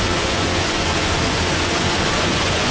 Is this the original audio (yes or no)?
no